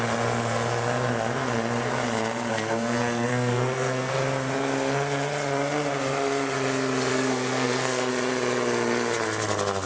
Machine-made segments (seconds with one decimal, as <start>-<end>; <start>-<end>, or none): 2.5-4.1; 7.1-8.1